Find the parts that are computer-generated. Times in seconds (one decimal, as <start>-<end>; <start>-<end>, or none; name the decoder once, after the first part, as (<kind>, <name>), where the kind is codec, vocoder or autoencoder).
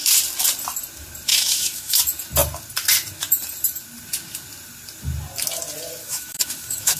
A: 1.3-2.0 (autoencoder, DAC-VAE); 6.0-7.0